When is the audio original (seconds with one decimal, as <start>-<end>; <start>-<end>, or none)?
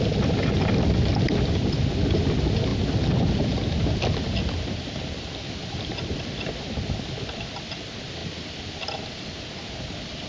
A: 0.0-10.3